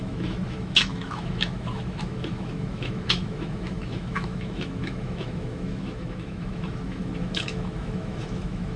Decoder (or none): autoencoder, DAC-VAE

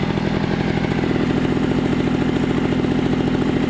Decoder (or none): none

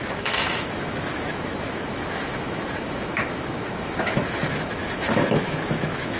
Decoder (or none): autoencoder, DAC-VAE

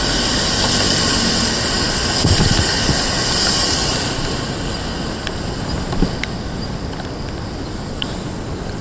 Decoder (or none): none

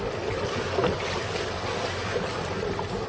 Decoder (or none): none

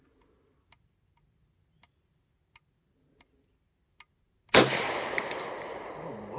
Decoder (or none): none